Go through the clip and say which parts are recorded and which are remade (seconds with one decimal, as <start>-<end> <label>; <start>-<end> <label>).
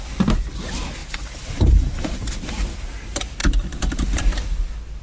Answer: 0.0-1.0 recorded; 1.0-2.4 remade; 2.4-3.4 recorded; 3.4-4.2 remade; 4.2-5.0 recorded